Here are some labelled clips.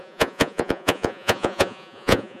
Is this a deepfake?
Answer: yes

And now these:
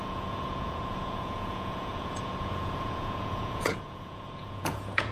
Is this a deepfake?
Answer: yes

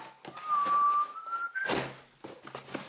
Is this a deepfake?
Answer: no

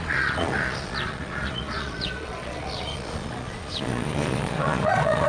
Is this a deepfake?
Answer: yes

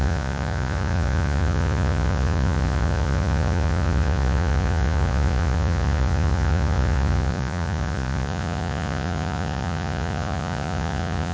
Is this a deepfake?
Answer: yes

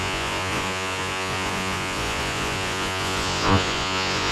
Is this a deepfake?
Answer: yes